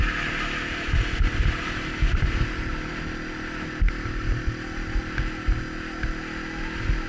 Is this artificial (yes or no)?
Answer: no